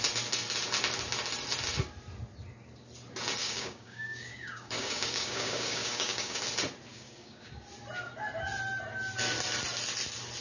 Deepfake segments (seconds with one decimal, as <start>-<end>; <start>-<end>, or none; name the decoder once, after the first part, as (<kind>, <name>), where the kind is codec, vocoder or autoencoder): 3.4-6.4 (codec, DAC); 6.9-7.5